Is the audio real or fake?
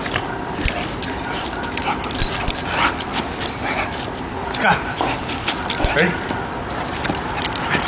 fake